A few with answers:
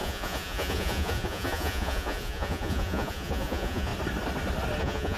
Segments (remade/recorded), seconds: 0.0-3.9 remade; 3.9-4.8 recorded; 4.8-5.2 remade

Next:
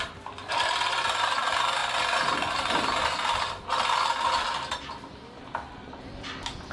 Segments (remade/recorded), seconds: 0.0-6.7 recorded

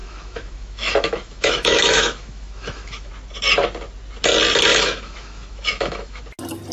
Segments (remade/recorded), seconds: 0.0-3.1 remade; 3.1-4.7 recorded; 4.7-6.2 remade; 6.2-6.7 recorded

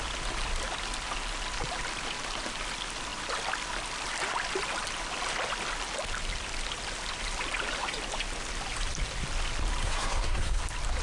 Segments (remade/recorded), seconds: 0.0-9.8 recorded; 9.8-10.6 remade; 10.6-11.0 recorded

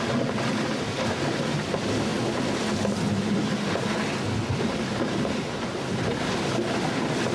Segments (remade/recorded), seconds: 0.0-7.3 recorded

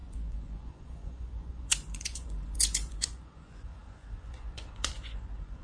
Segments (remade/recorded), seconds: 0.0-5.6 remade

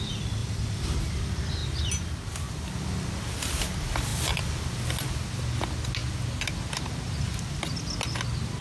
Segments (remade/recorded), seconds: 0.0-0.4 recorded; 0.4-1.1 remade; 1.1-8.6 recorded